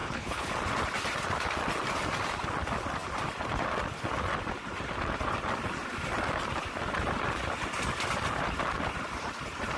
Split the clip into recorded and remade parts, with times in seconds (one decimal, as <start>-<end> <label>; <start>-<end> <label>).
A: 0.0-0.5 remade; 0.5-9.8 recorded